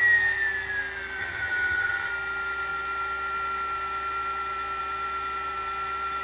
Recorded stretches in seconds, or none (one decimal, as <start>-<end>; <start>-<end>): 0.0-1.2; 2.1-6.2